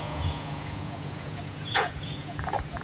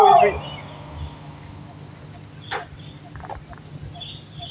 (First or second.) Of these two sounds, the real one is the second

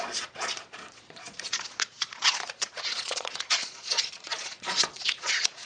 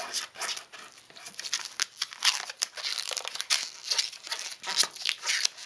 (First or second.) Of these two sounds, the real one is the second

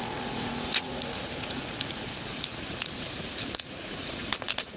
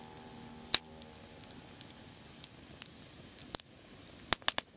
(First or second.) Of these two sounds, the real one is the second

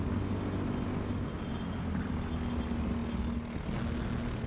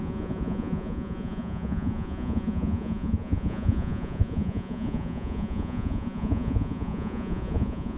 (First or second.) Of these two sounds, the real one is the first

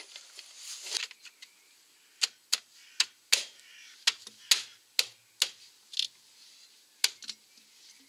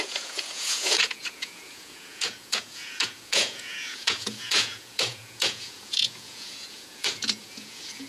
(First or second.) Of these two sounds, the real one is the first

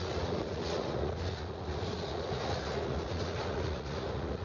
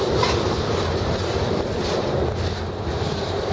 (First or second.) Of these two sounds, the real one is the second